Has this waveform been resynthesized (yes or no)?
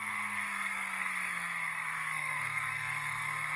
yes